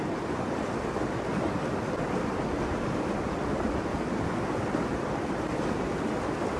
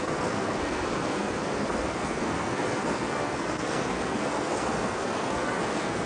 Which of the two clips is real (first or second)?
first